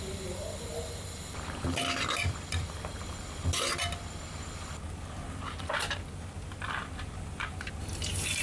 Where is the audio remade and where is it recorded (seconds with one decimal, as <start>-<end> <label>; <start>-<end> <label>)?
0.0-8.4 recorded